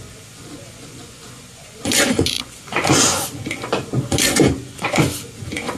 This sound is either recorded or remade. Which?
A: remade